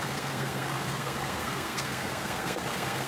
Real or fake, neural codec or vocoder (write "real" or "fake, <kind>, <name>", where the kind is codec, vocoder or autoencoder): fake, codec, SNAC